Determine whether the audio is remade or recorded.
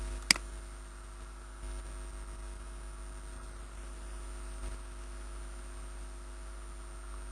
recorded